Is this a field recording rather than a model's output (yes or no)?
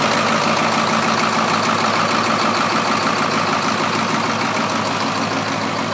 yes